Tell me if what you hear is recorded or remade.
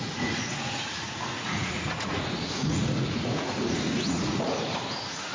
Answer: remade